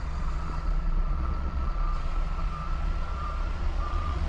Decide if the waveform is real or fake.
fake